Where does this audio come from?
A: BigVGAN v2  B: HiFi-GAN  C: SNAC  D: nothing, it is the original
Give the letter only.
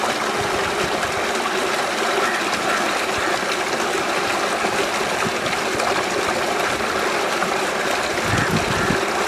D